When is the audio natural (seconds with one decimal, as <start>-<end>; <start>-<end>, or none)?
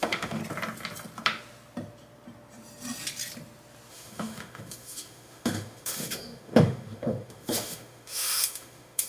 0.4-3.9